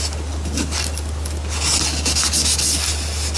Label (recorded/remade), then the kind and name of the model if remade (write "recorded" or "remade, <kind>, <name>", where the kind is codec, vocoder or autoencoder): recorded